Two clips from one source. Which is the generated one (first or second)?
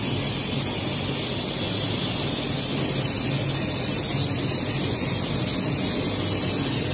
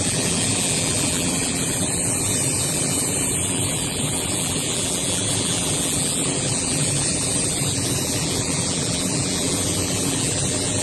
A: second